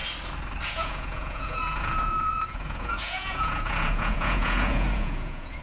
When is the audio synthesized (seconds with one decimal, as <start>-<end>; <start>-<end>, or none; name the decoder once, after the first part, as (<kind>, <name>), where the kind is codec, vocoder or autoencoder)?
0.7-5.6 (vocoder, Vocos)